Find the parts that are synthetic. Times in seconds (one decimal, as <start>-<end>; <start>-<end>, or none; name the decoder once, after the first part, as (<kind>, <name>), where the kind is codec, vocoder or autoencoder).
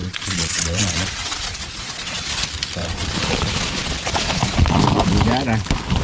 0.0-2.3 (vocoder, Vocos); 2.8-4.8